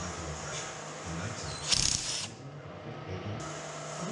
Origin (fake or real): real